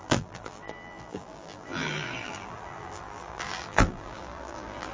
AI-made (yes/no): yes